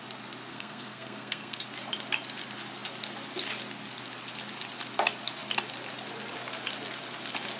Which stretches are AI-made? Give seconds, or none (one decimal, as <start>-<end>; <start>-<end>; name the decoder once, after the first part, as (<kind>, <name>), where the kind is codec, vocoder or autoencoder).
0.5-1.6 (codec, SNAC)